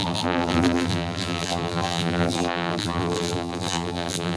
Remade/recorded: remade